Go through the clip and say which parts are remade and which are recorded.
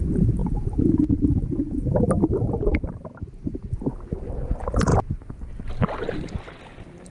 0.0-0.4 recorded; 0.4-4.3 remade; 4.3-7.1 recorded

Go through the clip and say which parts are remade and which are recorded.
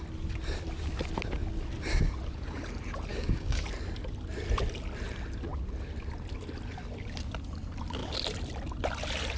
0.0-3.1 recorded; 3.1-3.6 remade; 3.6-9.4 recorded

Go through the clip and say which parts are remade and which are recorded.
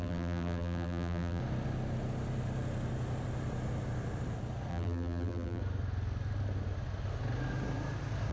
0.0-1.4 remade; 1.4-4.7 recorded; 4.7-5.6 remade; 5.6-8.3 recorded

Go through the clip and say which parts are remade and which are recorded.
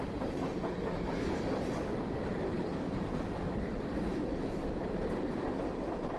0.0-3.7 recorded; 3.7-4.9 remade; 4.9-6.2 recorded